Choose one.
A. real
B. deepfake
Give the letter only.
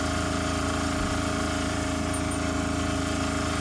A